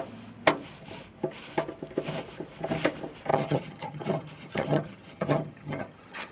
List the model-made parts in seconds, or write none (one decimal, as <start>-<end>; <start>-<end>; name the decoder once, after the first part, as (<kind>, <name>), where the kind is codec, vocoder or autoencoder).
3.3-6.3 (vocoder, HiFi-GAN)